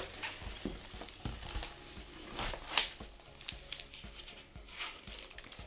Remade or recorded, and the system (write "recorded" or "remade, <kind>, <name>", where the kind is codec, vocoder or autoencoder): recorded